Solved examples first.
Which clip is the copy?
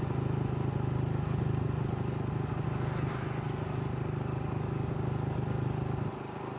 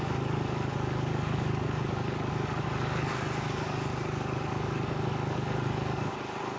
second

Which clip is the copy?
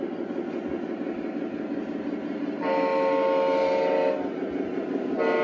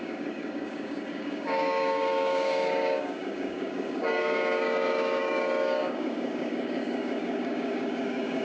second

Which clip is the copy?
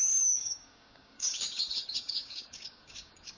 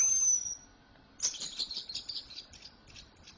first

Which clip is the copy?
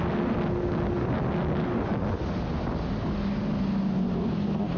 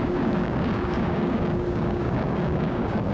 second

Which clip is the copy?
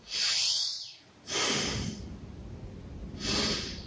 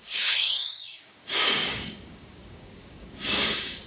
second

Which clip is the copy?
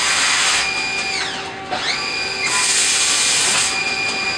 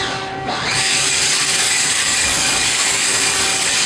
second